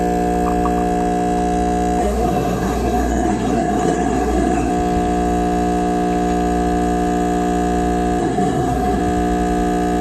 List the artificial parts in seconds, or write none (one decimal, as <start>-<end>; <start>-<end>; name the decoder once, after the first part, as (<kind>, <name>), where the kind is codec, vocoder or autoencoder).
2.0-4.7 (codec, SNAC); 8.2-9.0